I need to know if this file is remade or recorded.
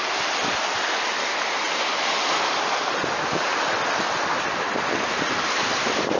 recorded